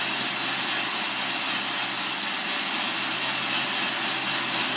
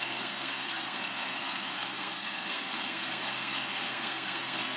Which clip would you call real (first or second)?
first